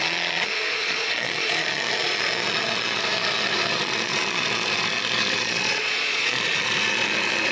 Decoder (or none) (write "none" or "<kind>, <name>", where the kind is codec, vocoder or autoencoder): vocoder, Vocos